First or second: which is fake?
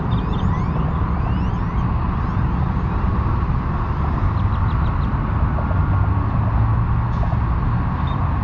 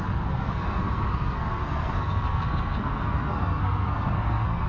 second